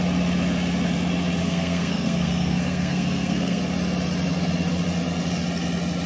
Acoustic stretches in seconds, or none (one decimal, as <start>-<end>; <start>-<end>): 0.0-1.4; 3.6-6.1